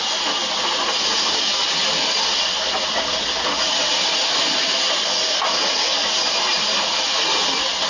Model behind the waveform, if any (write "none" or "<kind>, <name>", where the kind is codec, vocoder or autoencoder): none